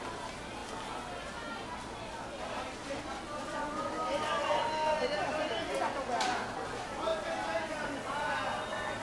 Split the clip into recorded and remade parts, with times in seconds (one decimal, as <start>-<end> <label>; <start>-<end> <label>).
0.0-9.0 recorded